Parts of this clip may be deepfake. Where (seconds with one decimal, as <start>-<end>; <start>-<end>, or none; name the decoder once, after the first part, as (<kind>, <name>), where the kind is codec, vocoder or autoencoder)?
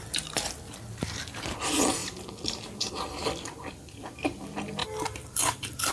4.8-5.9 (vocoder, BigVGAN v2)